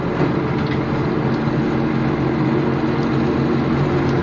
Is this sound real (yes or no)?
yes